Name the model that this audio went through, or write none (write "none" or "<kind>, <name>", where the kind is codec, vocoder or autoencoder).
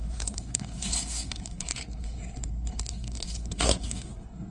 codec, SNAC